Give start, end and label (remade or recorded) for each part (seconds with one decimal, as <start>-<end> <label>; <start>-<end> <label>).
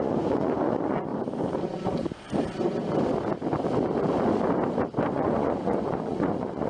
0.0-1.1 remade; 1.1-5.1 recorded; 5.1-6.7 remade